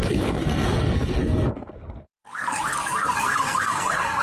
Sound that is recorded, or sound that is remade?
remade